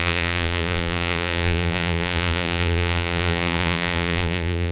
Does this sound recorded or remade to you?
remade